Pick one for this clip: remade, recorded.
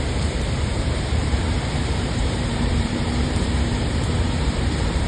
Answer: remade